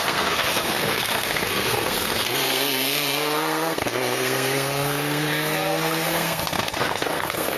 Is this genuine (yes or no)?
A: no